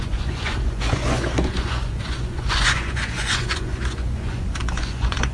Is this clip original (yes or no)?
no